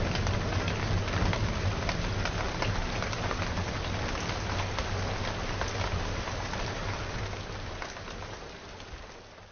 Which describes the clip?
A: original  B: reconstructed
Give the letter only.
A